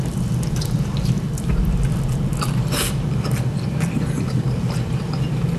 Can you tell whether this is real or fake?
fake